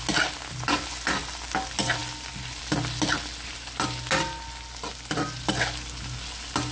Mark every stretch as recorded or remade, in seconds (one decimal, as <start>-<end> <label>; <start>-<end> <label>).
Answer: 0.0-6.7 recorded